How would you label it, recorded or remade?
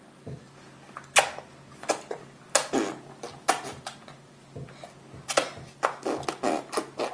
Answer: recorded